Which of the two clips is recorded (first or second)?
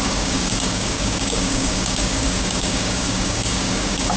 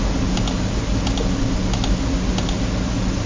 second